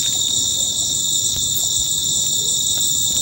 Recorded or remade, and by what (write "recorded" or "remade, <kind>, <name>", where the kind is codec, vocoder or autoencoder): remade, vocoder, BigVGAN v2